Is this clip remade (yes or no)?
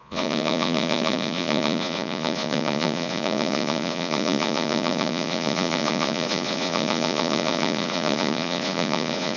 yes